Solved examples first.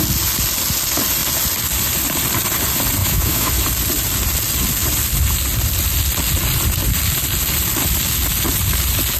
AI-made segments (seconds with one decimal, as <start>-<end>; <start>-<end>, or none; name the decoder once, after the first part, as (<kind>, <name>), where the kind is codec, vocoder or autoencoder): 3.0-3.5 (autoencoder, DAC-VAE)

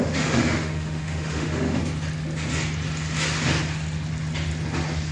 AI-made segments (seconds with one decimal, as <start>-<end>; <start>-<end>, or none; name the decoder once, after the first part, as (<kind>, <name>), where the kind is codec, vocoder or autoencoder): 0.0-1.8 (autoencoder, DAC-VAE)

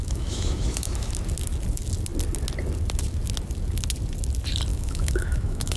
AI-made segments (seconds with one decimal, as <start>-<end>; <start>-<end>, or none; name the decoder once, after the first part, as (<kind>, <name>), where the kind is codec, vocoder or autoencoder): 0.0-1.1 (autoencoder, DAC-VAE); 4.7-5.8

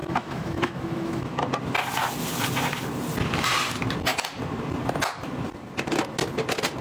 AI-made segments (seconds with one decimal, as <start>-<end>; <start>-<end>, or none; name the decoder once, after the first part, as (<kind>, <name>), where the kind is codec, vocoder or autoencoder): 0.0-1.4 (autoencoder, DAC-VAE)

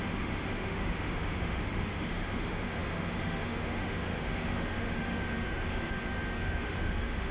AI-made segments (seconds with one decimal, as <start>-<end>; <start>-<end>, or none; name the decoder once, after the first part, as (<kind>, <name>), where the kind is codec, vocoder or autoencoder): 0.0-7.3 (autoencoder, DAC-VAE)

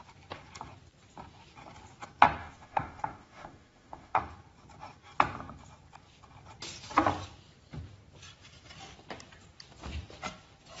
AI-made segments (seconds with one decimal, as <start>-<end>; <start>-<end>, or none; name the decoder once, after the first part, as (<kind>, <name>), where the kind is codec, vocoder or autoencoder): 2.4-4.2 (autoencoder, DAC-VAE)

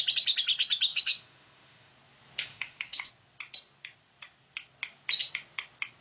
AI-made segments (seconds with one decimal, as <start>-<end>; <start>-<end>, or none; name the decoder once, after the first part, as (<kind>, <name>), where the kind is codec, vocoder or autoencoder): 0.9-1.9 (autoencoder, DAC-VAE); 2.5-3.1